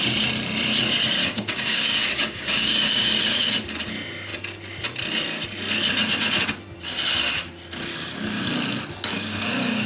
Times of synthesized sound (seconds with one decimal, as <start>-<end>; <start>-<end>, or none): 1.2-3.5; 9.1-9.9